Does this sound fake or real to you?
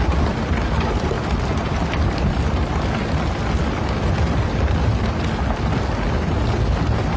real